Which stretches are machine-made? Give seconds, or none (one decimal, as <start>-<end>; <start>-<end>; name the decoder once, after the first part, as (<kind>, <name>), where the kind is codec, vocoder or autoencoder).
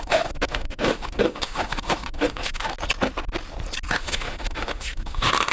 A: 0.0-2.7 (autoencoder, DAC-VAE); 3.9-5.5